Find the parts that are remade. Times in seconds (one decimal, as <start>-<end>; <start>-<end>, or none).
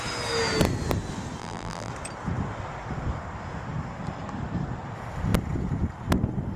1.4-1.9